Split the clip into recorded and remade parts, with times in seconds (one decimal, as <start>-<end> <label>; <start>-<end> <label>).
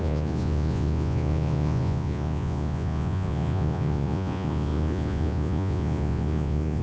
0.0-6.8 remade